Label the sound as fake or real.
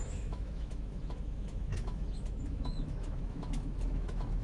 fake